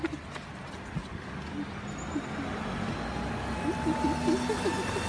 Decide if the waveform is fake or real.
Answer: real